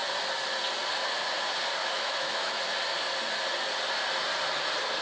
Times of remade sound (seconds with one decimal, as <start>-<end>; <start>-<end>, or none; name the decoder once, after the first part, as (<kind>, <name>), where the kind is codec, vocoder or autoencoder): 1.8-2.6 (autoencoder, DAC-VAE)